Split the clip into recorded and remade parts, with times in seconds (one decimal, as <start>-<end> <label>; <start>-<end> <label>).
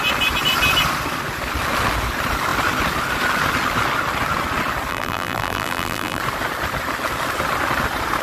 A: 0.0-4.9 recorded; 4.9-6.2 remade; 6.2-8.2 recorded